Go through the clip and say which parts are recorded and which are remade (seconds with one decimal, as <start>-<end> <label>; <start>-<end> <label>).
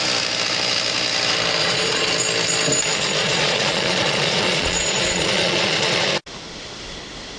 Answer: 0.0-1.6 recorded; 1.6-2.1 remade; 2.1-3.2 recorded; 3.2-6.1 remade; 6.1-7.4 recorded